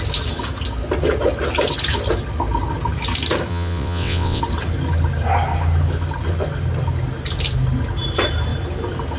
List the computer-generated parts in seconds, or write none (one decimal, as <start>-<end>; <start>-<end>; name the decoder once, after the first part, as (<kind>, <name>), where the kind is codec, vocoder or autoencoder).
3.5-4.4 (vocoder, WaveNeXt)